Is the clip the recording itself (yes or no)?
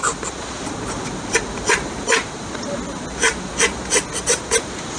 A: yes